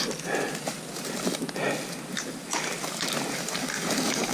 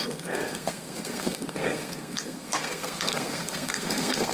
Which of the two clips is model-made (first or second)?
second